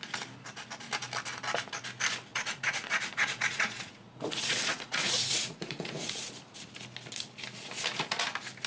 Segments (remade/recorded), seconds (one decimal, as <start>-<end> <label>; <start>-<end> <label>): 0.0-2.3 recorded; 2.3-6.3 remade; 6.3-8.7 recorded